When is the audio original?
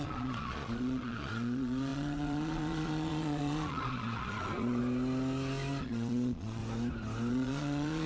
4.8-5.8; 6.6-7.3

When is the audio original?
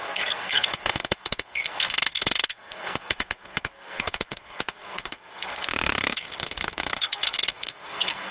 none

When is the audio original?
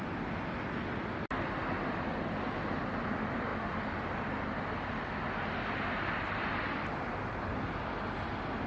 0.0-8.7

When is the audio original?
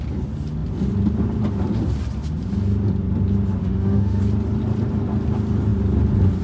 0.0-3.6; 4.2-6.4